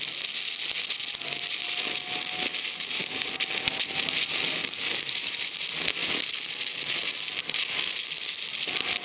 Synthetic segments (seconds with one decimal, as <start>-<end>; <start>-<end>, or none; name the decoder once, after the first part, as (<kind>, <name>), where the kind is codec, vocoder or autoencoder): 2.5-3.3 (vocoder, BigVGAN v2); 4.6-5.6